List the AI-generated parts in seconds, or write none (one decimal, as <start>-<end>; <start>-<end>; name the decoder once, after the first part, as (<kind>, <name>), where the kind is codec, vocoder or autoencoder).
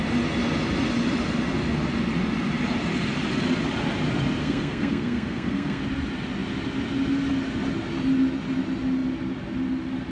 4.4-5.8 (codec, SNAC)